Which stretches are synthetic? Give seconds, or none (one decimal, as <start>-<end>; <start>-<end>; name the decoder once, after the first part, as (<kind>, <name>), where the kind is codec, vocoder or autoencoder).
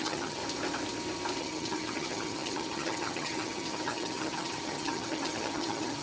0.0-0.4 (vocoder, HiFi-GAN); 1.4-6.0